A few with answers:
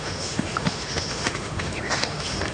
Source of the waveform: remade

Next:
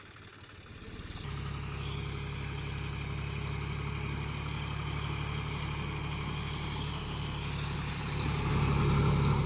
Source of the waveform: recorded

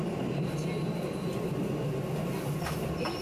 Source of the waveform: recorded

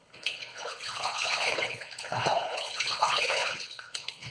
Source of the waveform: remade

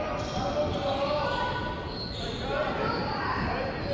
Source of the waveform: recorded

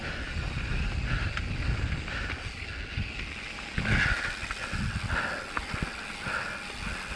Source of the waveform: recorded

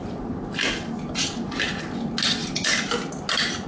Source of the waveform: recorded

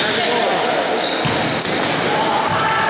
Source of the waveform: recorded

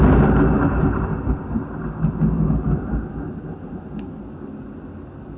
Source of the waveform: recorded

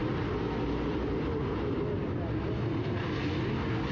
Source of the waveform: recorded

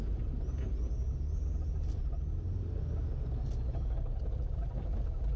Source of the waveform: recorded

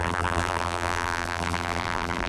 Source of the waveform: remade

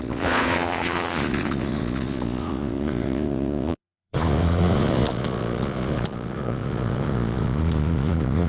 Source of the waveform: remade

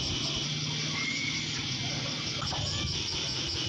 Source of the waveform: recorded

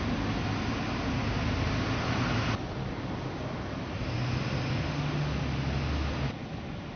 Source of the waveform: recorded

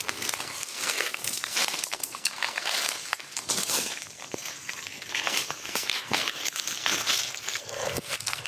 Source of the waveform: remade